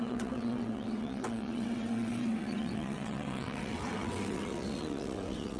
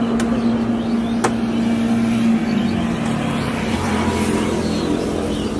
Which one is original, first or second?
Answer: second